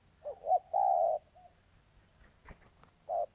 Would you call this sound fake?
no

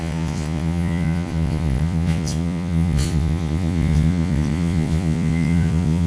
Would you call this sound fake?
yes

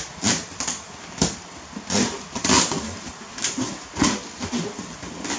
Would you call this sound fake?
no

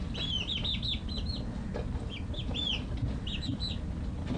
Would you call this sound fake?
no